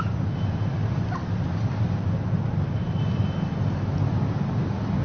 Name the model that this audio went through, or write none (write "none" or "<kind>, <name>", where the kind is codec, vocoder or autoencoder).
none